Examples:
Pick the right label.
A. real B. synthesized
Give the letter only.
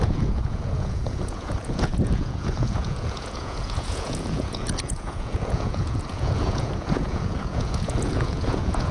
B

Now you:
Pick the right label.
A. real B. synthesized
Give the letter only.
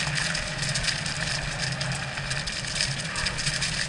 A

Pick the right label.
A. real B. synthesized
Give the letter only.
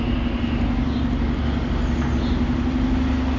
A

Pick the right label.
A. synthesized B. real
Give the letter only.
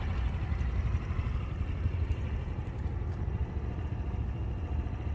B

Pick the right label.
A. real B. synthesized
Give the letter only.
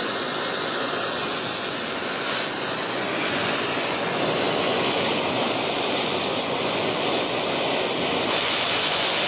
B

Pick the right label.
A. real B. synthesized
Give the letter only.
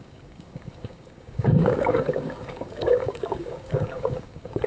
B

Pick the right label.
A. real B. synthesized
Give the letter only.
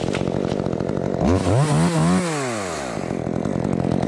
A